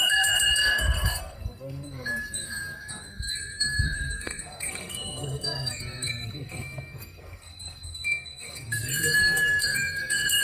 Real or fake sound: fake